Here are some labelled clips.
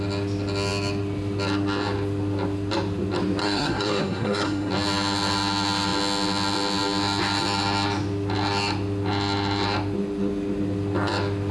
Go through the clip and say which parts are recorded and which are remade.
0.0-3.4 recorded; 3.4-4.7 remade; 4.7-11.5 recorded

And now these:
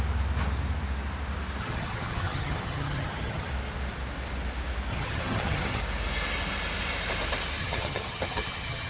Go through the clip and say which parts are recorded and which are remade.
0.0-1.6 recorded; 1.6-3.5 remade; 3.5-4.9 recorded; 4.9-5.8 remade; 5.8-7.6 recorded; 7.6-8.9 remade

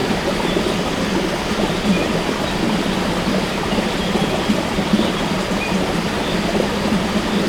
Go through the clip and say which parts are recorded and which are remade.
0.0-0.6 remade; 0.6-7.5 recorded

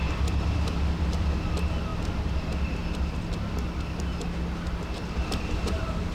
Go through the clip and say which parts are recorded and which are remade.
0.0-6.1 recorded

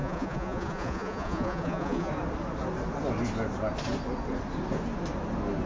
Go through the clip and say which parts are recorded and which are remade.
0.0-2.1 remade; 2.1-5.7 recorded

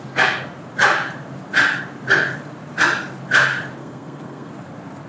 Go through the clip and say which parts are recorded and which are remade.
0.0-3.8 recorded; 3.8-4.5 remade; 4.5-5.1 recorded